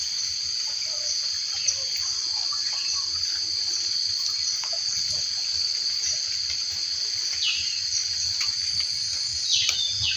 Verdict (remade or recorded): recorded